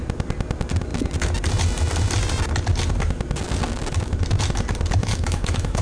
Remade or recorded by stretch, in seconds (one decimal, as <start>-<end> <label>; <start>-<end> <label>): 0.0-5.0 recorded; 5.0-5.8 remade